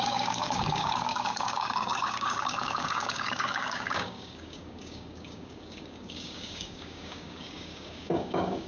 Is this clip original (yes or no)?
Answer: no